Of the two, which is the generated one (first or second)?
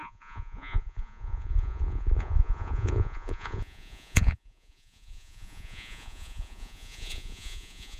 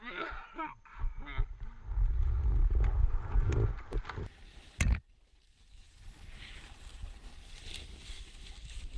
first